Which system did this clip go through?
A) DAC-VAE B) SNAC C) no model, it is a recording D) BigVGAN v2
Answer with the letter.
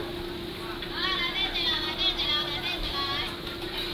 C